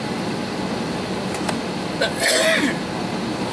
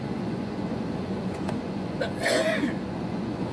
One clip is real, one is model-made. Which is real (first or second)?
first